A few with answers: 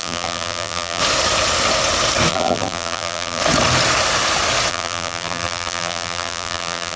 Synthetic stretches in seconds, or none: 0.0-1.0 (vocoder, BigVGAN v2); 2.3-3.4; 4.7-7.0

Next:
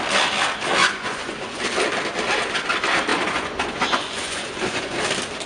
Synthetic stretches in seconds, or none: 0.8-1.6 (vocoder, Vocos); 3.1-5.0

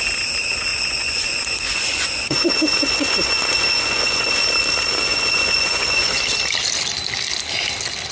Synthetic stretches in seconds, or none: 0.7-4.3 (vocoder, Vocos); 5.1-6.2

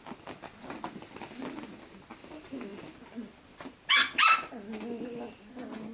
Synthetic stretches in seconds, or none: none

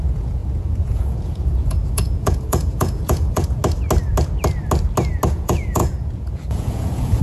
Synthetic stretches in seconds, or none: 0.0-3.6 (vocoder, Vocos); 5.3-7.2

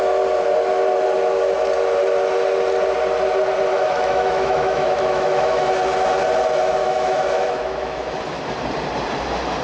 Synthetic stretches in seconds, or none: 3.7-5.7 (autoencoder, DAC-VAE); 6.8-8.2

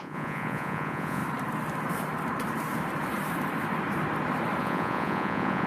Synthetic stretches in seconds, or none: 0.0-1.2 (vocoder, Vocos); 4.6-5.7

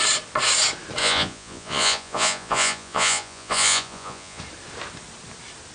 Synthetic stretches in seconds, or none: 1.0-4.4 (vocoder, Vocos)